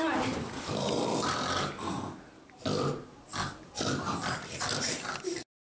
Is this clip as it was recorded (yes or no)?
yes